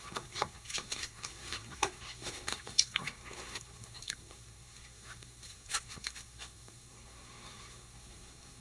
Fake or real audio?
fake